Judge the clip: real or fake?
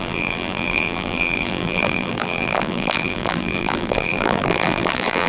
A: fake